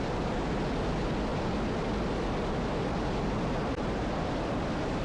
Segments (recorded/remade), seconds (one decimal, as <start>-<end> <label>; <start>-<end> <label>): 0.0-5.0 recorded